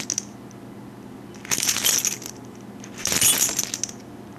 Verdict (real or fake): real